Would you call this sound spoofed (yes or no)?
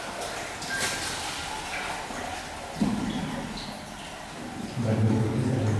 no